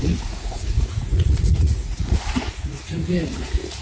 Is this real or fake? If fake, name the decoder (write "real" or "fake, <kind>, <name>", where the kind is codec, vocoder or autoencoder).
fake, vocoder, Vocos